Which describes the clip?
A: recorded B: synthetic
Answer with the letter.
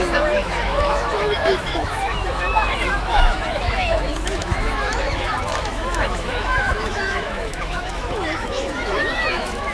B